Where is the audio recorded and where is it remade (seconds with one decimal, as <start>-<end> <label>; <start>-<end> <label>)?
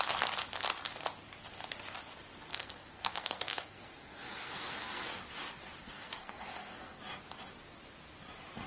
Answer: 0.0-2.5 recorded; 2.5-5.2 remade; 5.2-5.8 recorded; 5.8-7.0 remade; 7.0-8.7 recorded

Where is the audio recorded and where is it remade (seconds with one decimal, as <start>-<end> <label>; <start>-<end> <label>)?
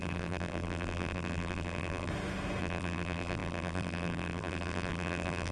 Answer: 0.0-2.1 remade; 2.1-2.6 recorded; 2.6-5.5 remade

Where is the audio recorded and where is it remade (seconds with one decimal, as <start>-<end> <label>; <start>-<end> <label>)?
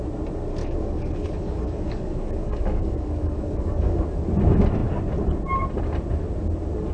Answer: 0.0-0.6 recorded; 0.6-4.0 remade; 4.0-6.9 recorded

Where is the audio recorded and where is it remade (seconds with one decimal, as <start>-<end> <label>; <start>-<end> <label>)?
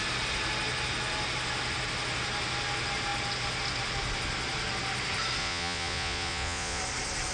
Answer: 0.0-5.4 recorded; 5.4-6.8 remade; 6.8-7.3 recorded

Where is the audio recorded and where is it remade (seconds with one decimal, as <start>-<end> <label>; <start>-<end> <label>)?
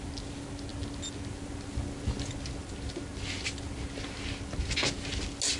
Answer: 0.0-5.6 recorded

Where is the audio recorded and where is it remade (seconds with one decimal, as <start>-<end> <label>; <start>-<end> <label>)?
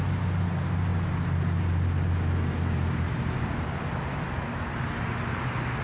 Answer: 0.0-5.8 recorded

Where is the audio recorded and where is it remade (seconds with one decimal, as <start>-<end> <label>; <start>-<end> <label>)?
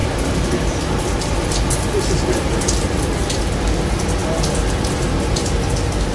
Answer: 0.0-6.1 recorded